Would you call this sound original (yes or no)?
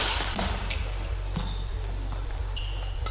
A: yes